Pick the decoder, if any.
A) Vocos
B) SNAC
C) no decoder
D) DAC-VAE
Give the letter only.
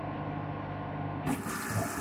C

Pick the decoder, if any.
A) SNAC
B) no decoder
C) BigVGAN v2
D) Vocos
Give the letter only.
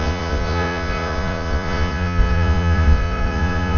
D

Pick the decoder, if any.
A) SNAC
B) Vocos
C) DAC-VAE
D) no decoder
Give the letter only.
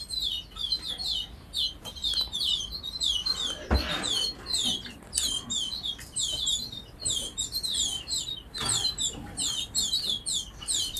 D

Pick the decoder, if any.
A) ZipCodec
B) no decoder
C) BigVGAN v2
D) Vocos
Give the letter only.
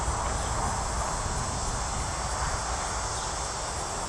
B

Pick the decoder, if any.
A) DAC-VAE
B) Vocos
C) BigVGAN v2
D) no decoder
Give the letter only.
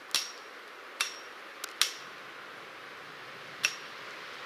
D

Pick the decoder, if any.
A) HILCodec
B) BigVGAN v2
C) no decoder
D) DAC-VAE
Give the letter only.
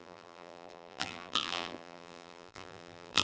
B